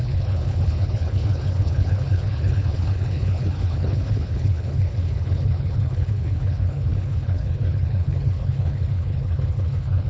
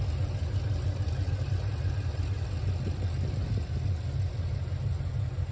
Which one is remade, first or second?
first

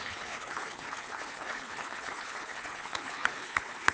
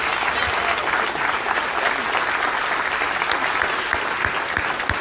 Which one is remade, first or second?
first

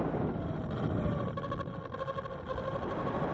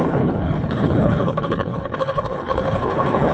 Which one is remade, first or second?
second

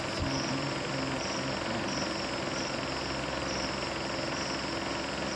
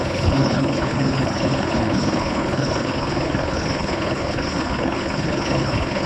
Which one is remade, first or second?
second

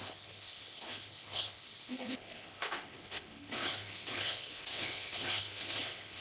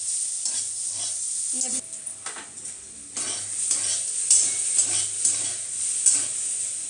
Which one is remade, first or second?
first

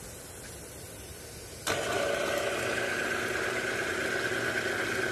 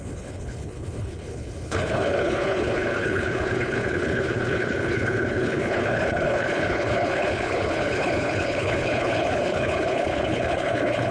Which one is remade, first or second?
second